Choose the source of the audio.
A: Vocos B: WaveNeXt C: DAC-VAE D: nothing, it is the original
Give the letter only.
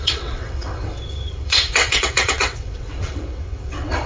B